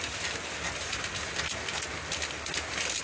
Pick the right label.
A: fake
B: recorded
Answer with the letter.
B